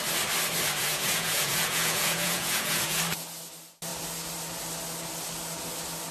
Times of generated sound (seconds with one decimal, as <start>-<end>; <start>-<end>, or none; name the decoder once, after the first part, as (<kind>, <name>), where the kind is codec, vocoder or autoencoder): 0.8-3.0 (vocoder, Vocos)